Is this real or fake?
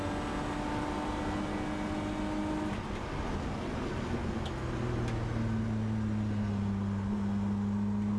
real